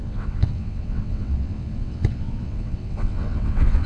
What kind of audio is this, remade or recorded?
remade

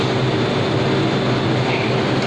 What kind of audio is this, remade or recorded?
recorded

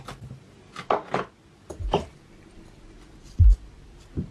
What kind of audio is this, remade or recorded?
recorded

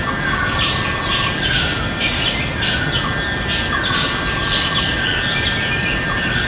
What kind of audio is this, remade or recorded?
remade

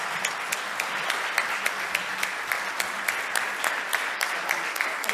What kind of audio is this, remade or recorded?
recorded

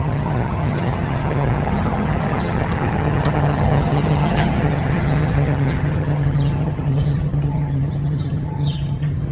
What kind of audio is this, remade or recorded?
remade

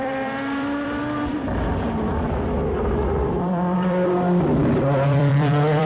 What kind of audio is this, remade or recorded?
remade